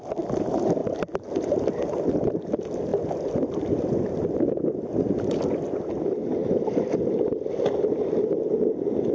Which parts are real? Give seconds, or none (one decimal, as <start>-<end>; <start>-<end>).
0.0-9.1